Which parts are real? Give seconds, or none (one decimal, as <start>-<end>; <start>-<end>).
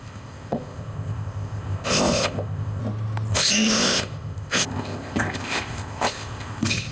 2.8-3.3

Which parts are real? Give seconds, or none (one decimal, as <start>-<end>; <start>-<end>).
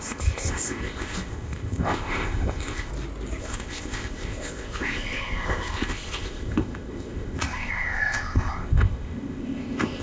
2.9-3.4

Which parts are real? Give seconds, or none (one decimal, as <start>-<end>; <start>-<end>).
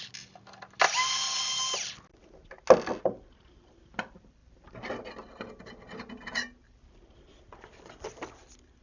0.0-8.8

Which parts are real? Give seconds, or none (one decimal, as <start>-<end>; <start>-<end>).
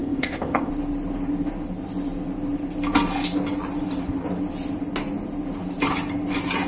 0.7-6.7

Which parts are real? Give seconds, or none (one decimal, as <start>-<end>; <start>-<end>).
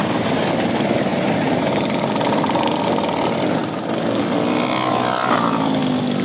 0.0-6.2